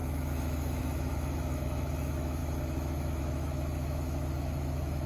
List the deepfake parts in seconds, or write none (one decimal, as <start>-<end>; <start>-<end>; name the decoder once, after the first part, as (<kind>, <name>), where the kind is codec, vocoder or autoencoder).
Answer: 0.0-5.1 (autoencoder, DAC-VAE)